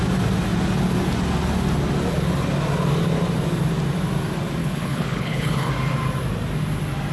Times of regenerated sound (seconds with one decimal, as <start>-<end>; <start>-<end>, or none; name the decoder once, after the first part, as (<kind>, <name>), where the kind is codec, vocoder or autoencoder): 4.6-5.7 (codec, HILCodec)